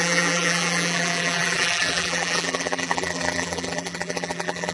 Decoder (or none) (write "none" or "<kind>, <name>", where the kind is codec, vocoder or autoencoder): vocoder, BigVGAN v2